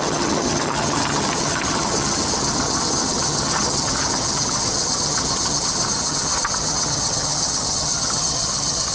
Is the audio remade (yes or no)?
yes